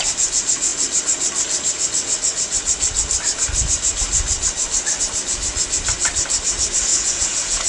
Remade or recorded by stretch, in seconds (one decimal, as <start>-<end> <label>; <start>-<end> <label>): 0.0-6.9 recorded; 6.9-7.7 remade